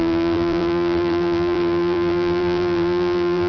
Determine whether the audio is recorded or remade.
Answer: remade